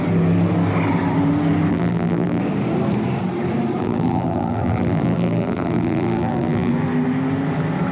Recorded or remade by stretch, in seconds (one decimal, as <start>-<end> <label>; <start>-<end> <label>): 0.0-1.7 recorded; 1.7-2.4 remade; 2.4-3.8 recorded; 3.8-6.7 remade; 6.7-7.9 recorded